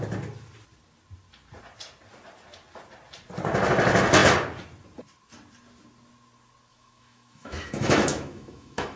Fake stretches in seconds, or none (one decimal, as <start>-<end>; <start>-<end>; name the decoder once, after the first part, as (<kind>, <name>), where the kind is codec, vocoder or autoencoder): 6.7-9.0 (autoencoder, DAC-VAE)